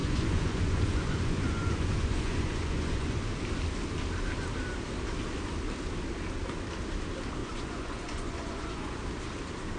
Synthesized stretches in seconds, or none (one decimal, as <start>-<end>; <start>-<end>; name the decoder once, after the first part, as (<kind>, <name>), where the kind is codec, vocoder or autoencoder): 0.0-3.2 (vocoder, Vocos); 7.4-9.0